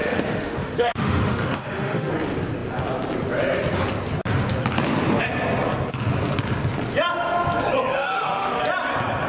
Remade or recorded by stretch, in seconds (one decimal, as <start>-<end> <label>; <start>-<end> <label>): 0.0-2.1 remade; 2.1-7.9 recorded; 7.9-8.6 remade; 8.6-9.3 recorded